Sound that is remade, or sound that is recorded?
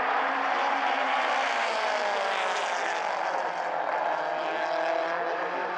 recorded